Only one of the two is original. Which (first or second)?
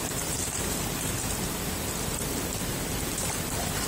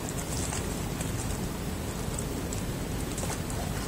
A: second